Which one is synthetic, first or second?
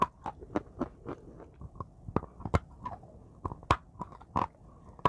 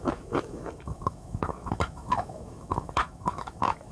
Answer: second